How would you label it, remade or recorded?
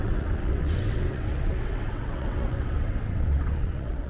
remade